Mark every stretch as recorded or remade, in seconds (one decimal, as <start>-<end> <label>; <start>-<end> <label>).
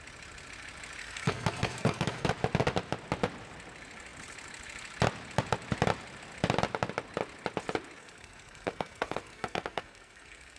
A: 0.0-1.0 recorded; 1.0-2.3 remade; 2.3-8.0 recorded; 8.0-10.6 remade